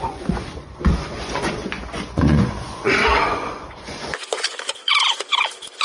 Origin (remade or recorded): remade